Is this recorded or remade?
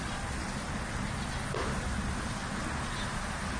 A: recorded